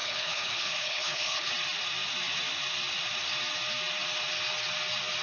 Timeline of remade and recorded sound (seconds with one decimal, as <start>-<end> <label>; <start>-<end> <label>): 0.0-1.5 remade; 1.5-5.2 recorded